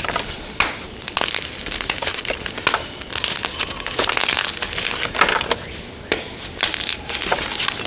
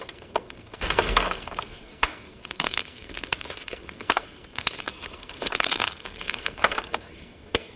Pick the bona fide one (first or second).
first